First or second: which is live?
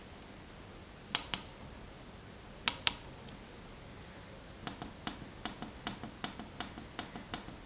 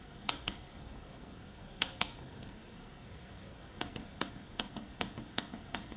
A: first